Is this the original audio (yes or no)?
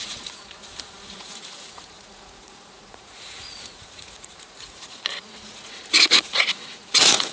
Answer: no